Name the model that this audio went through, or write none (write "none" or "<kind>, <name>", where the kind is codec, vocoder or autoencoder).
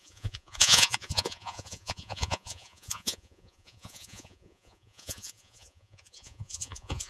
vocoder, Vocos